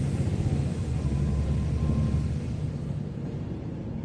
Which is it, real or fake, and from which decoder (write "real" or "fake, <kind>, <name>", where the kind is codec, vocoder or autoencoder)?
real